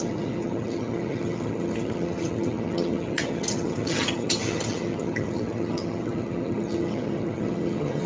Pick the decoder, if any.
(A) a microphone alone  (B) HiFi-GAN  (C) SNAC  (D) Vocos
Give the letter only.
B